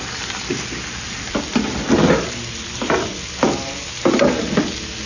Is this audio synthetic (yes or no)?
no